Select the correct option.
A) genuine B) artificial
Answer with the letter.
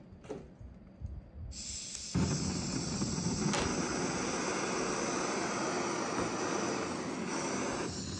A